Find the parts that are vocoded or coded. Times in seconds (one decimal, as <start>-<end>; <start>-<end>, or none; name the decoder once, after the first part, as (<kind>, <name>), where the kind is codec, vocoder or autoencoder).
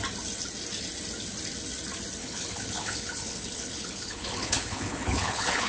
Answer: 2.2-5.7 (codec, HILCodec)